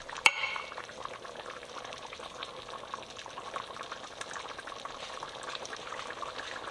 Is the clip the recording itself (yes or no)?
yes